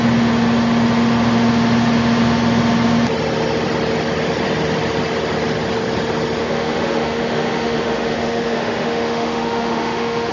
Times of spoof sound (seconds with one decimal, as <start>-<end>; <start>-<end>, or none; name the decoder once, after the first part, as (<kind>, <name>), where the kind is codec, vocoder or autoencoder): 6.4-10.3 (autoencoder, DAC-VAE)